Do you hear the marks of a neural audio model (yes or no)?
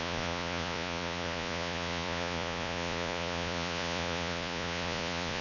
yes